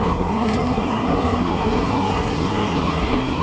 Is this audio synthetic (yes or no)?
yes